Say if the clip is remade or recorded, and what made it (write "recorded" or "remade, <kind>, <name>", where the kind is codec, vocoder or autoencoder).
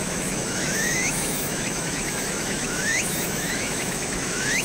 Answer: remade, autoencoder, DAC-VAE